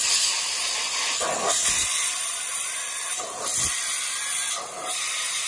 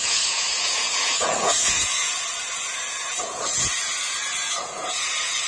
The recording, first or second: first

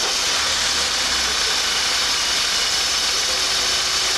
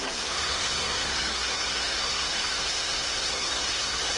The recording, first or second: first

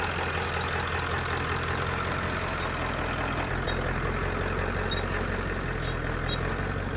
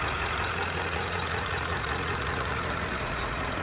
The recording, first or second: first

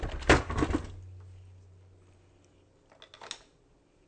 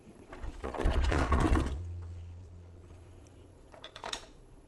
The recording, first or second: first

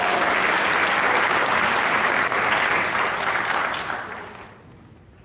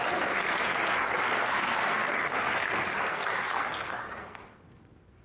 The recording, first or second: first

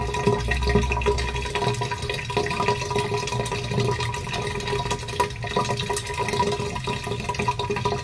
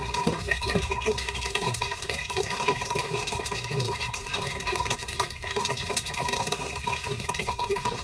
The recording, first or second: first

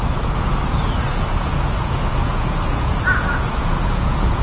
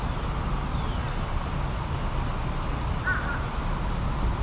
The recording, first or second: second